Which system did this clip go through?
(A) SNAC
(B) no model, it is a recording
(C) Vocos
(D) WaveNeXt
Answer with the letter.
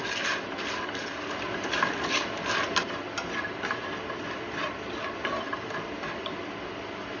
B